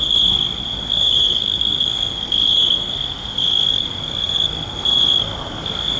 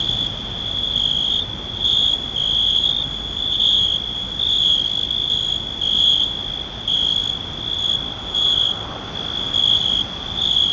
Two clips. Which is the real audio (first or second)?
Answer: second